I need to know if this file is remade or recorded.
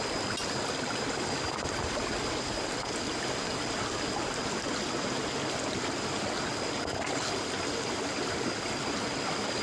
recorded